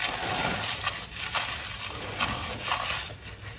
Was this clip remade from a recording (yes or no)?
no